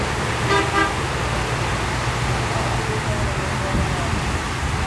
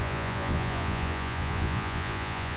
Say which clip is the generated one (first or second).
second